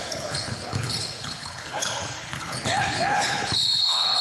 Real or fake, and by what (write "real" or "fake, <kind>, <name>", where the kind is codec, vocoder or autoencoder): fake, codec, HILCodec